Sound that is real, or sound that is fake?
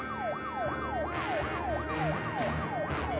real